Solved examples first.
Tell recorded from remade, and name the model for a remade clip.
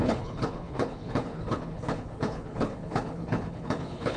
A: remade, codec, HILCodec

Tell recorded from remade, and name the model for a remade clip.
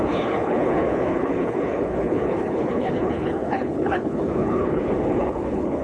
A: remade, codec, HILCodec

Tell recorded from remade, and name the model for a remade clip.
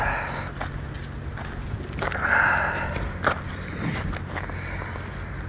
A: recorded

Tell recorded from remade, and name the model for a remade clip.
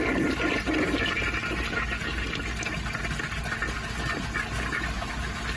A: recorded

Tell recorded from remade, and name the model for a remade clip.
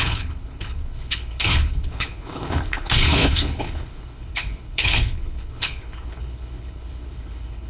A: remade, codec, HILCodec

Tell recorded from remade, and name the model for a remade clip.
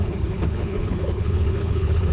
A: remade, codec, HILCodec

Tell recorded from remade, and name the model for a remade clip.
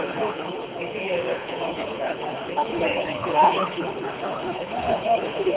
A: remade, codec, HILCodec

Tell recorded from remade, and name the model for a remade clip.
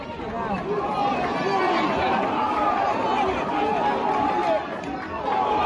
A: recorded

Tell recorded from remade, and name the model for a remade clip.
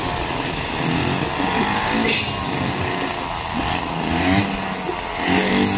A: recorded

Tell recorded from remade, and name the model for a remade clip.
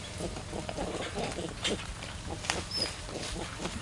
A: recorded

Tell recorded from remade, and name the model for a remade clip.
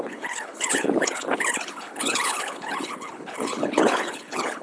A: remade, codec, HILCodec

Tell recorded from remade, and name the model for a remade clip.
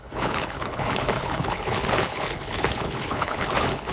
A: remade, codec, HILCodec